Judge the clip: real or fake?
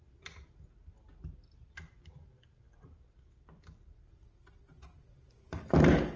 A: real